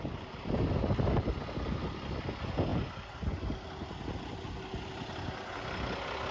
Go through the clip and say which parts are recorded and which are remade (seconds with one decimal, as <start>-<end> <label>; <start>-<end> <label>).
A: 0.0-6.3 recorded